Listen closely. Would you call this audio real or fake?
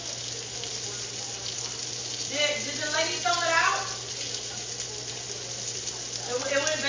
real